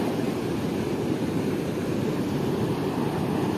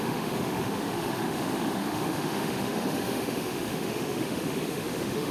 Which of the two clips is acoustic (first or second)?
first